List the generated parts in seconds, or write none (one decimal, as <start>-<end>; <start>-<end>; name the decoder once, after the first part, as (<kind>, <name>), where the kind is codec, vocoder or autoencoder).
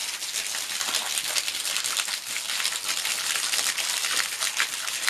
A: none